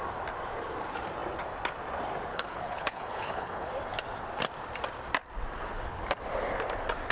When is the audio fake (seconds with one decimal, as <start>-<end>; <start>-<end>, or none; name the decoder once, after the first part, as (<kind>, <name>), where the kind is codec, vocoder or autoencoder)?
2.3-3.7 (codec, HILCodec)